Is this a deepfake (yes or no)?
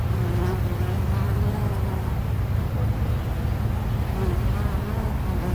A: no